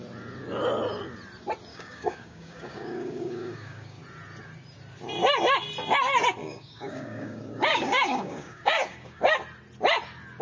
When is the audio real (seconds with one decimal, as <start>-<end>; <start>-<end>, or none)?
0.0-1.7; 4.0-6.4; 9.2-10.4